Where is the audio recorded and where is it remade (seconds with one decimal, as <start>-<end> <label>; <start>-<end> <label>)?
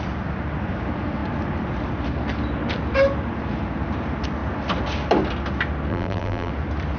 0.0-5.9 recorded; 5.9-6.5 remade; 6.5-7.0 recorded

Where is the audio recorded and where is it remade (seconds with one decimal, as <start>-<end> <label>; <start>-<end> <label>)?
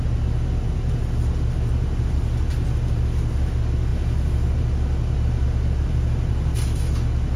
0.0-7.4 recorded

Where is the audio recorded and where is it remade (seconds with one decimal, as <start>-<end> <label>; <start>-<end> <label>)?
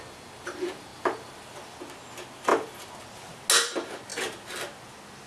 0.0-5.3 recorded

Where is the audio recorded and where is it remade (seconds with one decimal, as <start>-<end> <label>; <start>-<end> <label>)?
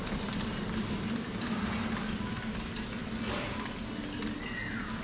0.0-3.0 remade; 3.0-5.0 recorded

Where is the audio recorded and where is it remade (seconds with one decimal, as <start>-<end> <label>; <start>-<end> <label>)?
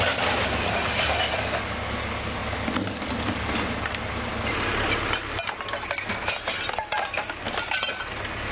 0.0-0.8 recorded; 0.8-1.6 remade; 1.6-8.5 recorded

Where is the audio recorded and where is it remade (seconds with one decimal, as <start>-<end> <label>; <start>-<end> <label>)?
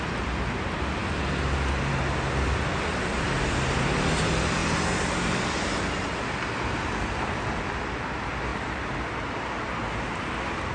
0.0-8.5 recorded; 8.5-9.0 remade; 9.0-10.7 recorded